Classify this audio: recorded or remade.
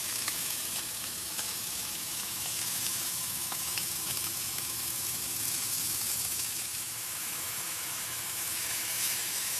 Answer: remade